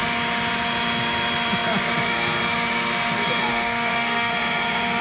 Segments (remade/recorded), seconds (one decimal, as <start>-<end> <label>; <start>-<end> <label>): 0.0-3.5 recorded; 3.5-4.3 remade; 4.3-5.0 recorded